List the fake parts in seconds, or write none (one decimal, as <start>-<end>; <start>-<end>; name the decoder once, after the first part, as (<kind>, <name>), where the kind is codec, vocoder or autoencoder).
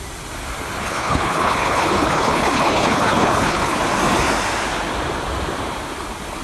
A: 0.8-3.8 (codec, HILCodec)